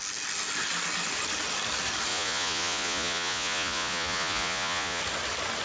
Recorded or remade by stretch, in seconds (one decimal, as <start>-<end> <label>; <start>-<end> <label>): 0.0-2.1 recorded; 2.1-5.0 remade; 5.0-5.6 recorded